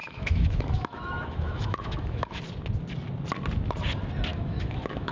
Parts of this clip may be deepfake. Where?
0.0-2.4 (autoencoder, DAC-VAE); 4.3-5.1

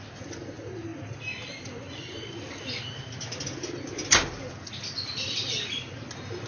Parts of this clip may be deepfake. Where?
none

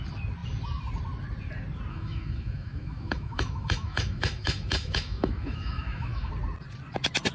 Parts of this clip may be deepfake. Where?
1.9-6.3 (autoencoder, DAC-VAE)

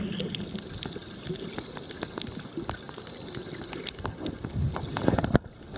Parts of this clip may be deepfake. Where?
none

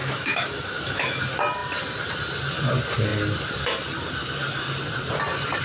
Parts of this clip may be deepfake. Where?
0.0-1.2 (autoencoder, DAC-VAE)

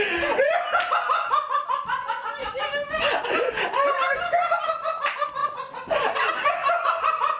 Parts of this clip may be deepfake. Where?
2.4-3.1 (autoencoder, DAC-VAE)

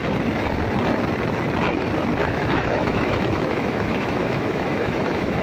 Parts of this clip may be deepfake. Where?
2.2-5.4 (autoencoder, DAC-VAE)

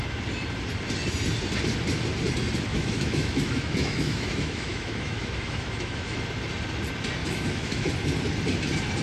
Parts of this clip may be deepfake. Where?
2.7-6.2 (autoencoder, DAC-VAE); 7.2-7.9